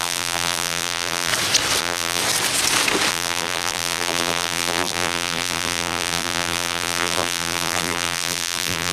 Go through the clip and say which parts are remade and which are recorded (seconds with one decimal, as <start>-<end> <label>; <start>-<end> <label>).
0.0-1.3 remade; 1.3-1.8 recorded; 1.8-2.2 remade; 2.2-3.1 recorded; 3.1-8.9 remade